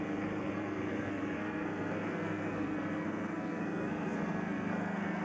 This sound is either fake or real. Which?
fake